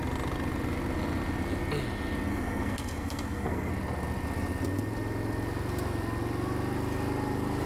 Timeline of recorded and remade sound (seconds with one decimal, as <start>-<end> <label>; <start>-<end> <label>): 0.0-2.3 recorded; 2.3-3.7 remade; 3.7-7.7 recorded